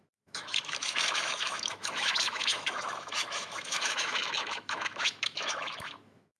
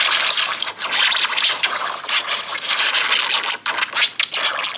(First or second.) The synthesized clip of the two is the first